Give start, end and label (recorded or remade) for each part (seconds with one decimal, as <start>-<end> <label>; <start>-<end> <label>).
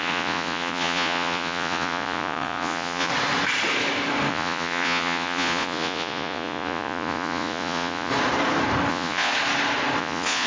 0.0-3.1 remade; 3.1-4.3 recorded; 4.3-8.1 remade; 8.1-8.9 recorded; 8.9-9.3 remade; 9.3-10.0 recorded; 10.0-10.5 remade